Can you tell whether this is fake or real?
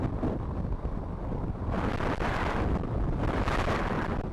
real